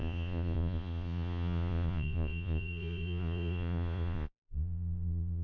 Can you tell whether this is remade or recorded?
remade